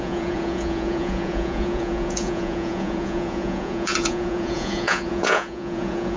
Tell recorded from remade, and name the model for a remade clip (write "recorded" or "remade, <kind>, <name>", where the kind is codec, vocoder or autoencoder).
remade, vocoder, Vocos